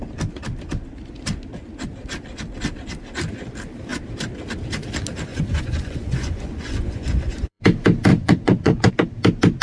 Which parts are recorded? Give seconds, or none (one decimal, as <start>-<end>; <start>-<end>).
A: 0.0-5.3; 7.6-8.1; 8.9-9.6